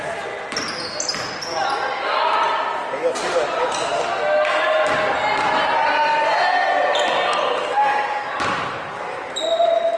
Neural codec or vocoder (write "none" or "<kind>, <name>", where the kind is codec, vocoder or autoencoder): none